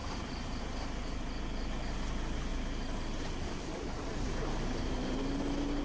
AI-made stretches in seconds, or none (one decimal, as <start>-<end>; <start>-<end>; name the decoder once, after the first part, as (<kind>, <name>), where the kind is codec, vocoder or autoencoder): 0.0-0.6 (vocoder, BigVGAN v2); 2.5-5.2